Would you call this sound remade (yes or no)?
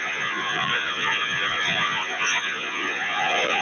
yes